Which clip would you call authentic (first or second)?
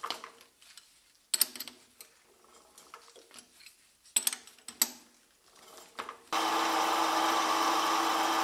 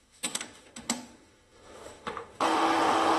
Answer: first